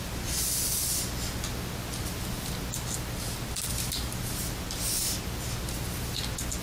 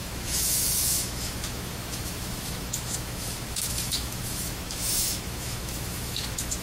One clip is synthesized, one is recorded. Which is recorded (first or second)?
first